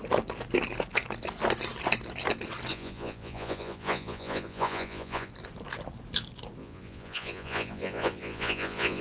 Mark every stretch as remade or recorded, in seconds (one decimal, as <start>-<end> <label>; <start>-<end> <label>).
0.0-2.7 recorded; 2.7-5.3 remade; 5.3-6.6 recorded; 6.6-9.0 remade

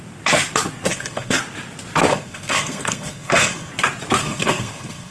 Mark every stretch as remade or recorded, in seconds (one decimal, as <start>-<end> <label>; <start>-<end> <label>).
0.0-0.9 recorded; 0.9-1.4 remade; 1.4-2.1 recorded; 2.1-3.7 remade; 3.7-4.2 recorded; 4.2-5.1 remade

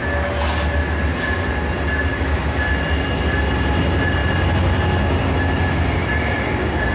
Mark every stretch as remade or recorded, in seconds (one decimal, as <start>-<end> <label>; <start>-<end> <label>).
0.0-2.1 recorded; 2.1-2.7 remade; 2.7-6.9 recorded

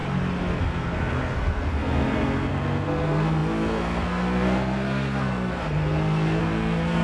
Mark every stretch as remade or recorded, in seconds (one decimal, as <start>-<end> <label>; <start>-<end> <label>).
0.0-0.6 recorded; 0.6-7.0 remade

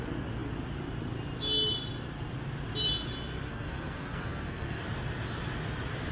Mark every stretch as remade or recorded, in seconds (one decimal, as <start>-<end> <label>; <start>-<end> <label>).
0.0-3.5 recorded; 3.5-4.8 remade; 4.8-6.1 recorded

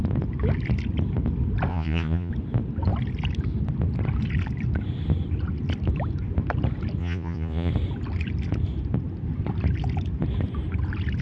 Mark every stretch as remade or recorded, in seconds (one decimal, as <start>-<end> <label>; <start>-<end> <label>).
0.0-1.7 recorded; 1.7-2.3 remade; 2.3-7.0 recorded; 7.0-7.7 remade; 7.7-11.2 recorded

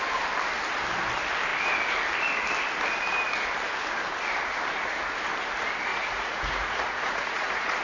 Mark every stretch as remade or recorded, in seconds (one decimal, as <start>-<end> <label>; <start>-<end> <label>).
0.0-5.9 recorded; 5.9-7.8 remade